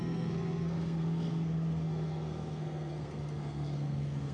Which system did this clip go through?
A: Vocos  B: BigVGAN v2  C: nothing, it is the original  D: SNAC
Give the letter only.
D